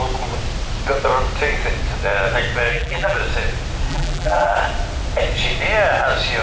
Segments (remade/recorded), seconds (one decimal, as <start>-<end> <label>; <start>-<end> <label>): 0.0-2.7 recorded; 2.7-3.2 remade; 3.2-3.9 recorded; 3.9-4.5 remade; 4.5-6.4 recorded